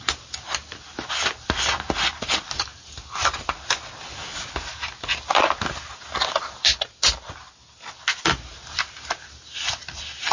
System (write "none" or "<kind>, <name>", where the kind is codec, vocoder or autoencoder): none